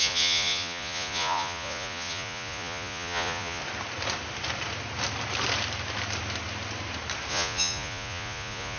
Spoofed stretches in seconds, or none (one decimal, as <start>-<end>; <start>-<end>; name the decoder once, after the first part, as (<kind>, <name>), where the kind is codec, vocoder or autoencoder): 0.0-3.6 (vocoder, Vocos); 7.3-8.8